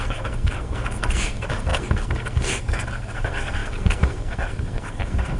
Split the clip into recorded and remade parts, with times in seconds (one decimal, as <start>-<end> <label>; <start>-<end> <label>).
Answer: 0.0-5.4 remade